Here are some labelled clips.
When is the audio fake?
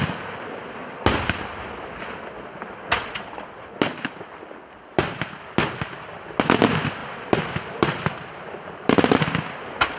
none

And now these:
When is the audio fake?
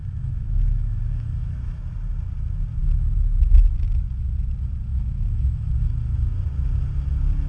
0.0-1.8 (autoencoder, DAC-VAE); 4.9-5.7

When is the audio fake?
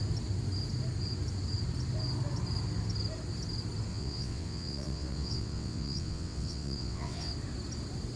3.9-7.3 (vocoder, WaveNeXt)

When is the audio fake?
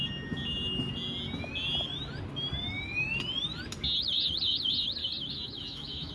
5.0-6.1 (autoencoder, DAC-VAE)